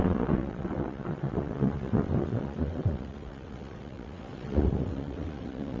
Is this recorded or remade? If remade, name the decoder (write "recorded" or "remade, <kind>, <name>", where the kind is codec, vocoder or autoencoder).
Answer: remade, vocoder, WaveNeXt